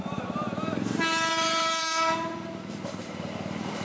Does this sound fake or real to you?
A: fake